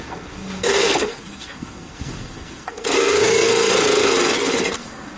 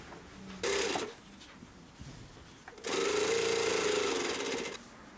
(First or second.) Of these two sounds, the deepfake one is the first